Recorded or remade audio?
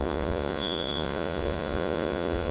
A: remade